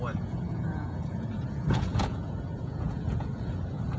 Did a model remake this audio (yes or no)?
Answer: yes